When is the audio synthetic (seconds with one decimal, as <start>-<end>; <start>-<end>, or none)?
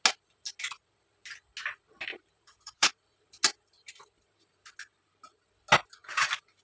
2.1-2.9; 6.0-6.6